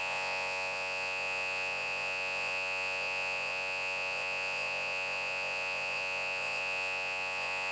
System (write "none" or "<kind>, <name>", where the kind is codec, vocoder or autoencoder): vocoder, Vocos